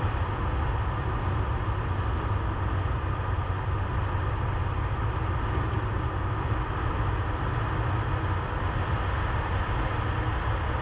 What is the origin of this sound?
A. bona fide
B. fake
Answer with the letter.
A